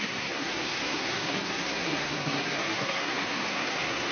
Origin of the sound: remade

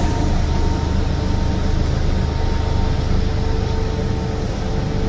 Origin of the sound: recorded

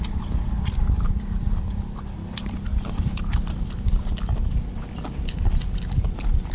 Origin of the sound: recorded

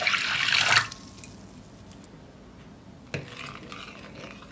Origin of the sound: recorded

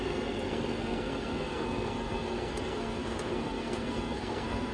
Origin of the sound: remade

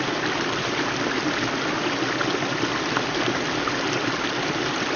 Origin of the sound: recorded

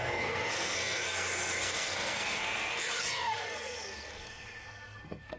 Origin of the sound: remade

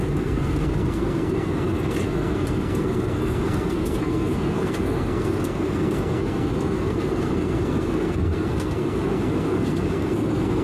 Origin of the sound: remade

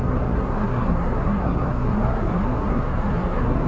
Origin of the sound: remade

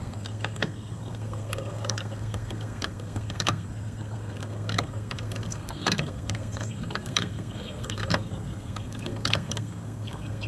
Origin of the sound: remade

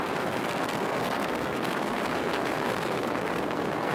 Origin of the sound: remade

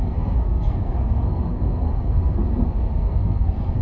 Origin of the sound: remade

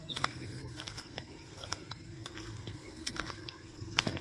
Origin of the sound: remade